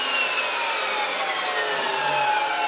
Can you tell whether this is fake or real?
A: real